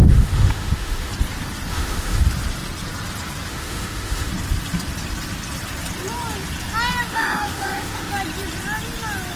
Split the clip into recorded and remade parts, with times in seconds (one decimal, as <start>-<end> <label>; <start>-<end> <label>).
0.0-1.1 remade; 1.1-1.7 recorded; 1.7-2.2 remade; 2.2-3.5 recorded; 3.5-4.3 remade; 4.3-7.1 recorded; 7.1-8.1 remade; 8.1-9.4 recorded